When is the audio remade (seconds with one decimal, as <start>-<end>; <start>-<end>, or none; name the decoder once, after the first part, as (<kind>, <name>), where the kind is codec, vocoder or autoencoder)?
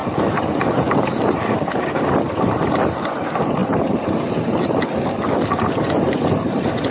3.6-4.8 (vocoder, BigVGAN v2)